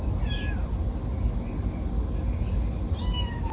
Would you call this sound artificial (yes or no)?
no